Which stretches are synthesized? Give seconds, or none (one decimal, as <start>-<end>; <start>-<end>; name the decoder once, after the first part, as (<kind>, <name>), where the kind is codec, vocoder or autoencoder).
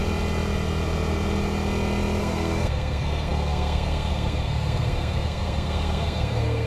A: 2.2-6.7 (codec, SNAC)